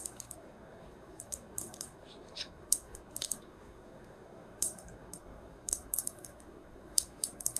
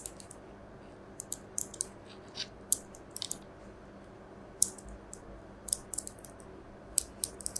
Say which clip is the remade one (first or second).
first